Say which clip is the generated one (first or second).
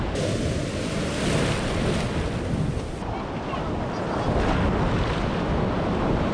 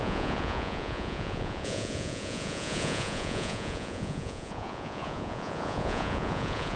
second